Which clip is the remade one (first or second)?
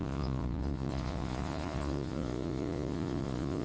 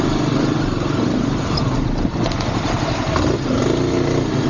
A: first